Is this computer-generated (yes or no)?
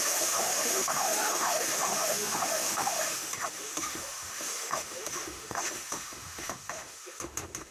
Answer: yes